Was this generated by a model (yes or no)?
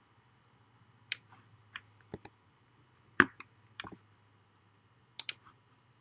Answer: yes